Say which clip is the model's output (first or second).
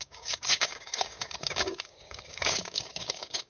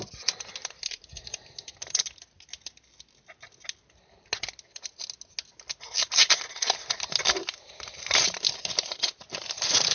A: first